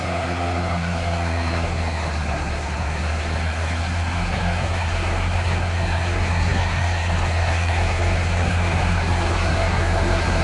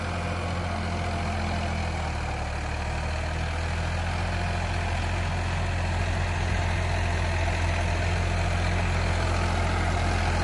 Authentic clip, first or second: second